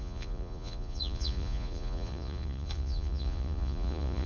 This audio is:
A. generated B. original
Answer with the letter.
A